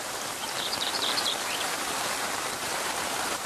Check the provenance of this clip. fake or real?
fake